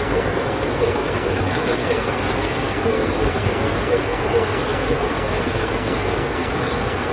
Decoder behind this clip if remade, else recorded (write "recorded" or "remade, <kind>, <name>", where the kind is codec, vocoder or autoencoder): remade, codec, SNAC